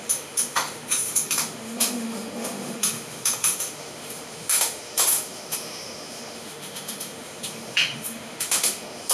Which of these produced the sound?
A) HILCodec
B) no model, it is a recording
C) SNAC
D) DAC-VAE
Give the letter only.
D